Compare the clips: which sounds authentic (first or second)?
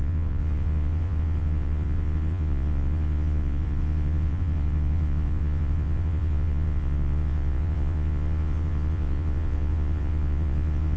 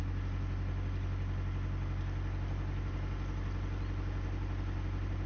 second